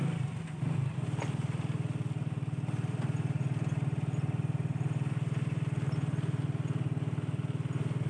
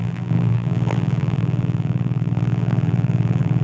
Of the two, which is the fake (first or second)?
second